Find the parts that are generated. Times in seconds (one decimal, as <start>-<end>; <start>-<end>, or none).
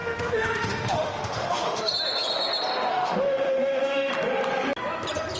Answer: 0.0-1.9; 2.9-4.1